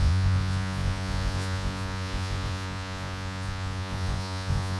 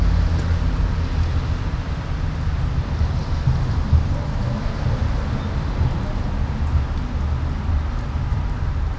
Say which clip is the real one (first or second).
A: second